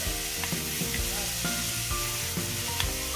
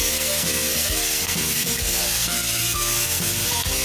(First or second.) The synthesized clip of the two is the second